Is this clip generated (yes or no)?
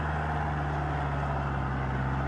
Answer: no